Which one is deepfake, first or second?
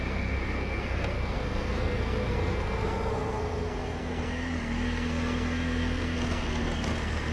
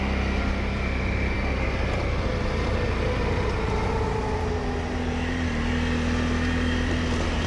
first